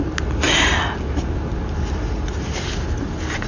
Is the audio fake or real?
real